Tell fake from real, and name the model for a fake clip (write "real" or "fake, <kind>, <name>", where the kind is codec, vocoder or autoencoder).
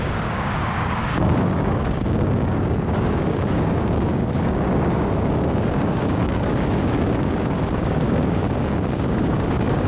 fake, codec, DAC